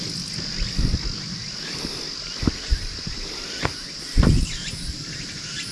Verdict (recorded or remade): recorded